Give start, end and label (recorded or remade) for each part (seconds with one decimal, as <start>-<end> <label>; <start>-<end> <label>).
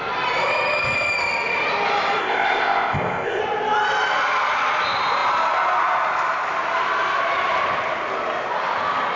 0.0-2.2 recorded; 2.2-3.4 remade; 3.4-9.2 recorded